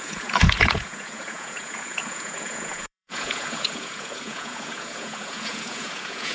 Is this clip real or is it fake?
fake